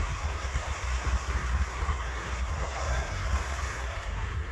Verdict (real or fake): fake